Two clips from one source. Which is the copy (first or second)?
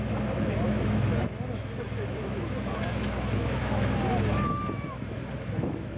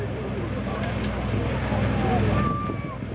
first